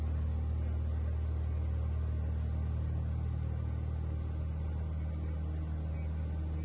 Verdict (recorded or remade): recorded